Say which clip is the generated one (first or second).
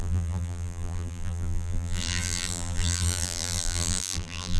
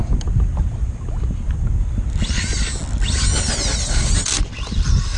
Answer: first